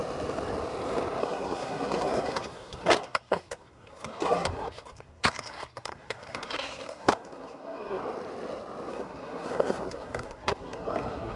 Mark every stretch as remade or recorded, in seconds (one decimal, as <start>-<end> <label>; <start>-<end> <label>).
0.0-1.2 recorded; 1.2-8.0 remade; 8.0-8.9 recorded; 8.9-11.4 remade